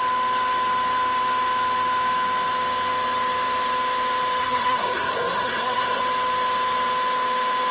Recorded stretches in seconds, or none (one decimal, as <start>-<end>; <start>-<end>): 0.0-4.4; 6.0-7.7